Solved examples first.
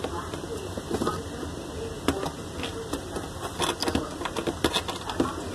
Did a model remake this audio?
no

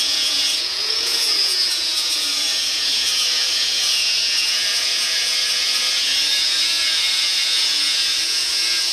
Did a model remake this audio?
yes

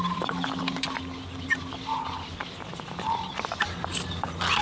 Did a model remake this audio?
no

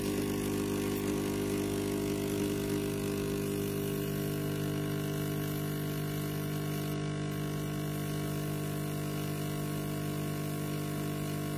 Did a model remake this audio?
no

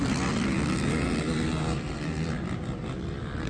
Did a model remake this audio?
no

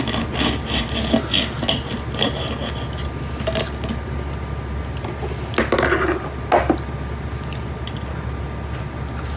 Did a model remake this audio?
no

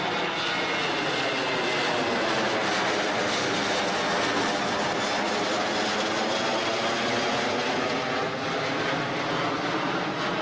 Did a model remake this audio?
no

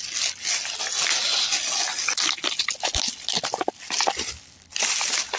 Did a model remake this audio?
no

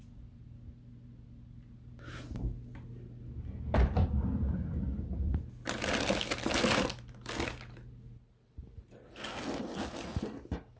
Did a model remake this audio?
no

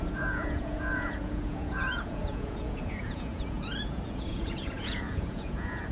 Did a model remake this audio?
yes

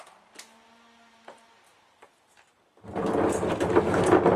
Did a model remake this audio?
no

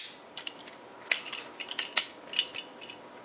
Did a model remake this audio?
no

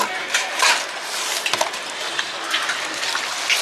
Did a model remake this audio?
no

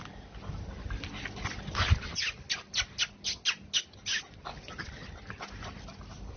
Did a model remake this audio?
no